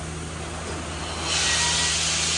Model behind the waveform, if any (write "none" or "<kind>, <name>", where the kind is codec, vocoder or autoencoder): none